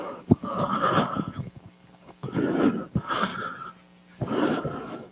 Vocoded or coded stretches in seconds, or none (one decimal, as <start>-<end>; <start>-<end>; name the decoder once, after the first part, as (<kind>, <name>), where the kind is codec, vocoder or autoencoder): 0.0-2.4 (codec, DAC); 2.9-3.3; 4.1-5.1